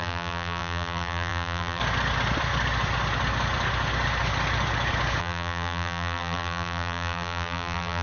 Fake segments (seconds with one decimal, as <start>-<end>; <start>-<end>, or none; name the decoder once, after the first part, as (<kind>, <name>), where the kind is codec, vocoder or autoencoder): 0.0-1.8 (vocoder, BigVGAN v2); 5.2-8.0